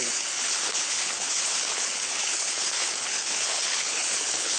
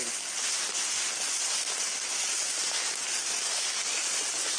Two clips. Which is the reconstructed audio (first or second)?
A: first